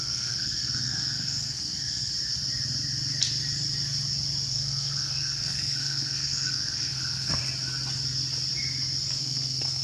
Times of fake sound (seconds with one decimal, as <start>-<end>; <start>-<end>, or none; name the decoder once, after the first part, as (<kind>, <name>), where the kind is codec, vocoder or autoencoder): 0.0-2.1 (codec, SNAC); 4.5-7.4; 9.2-9.8

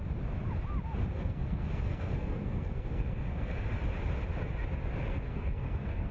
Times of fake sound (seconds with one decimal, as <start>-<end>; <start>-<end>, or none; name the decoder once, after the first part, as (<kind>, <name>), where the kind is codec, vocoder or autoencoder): 1.1-3.5 (codec, SNAC); 5.0-6.1